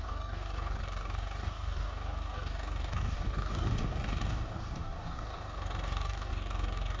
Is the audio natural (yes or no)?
no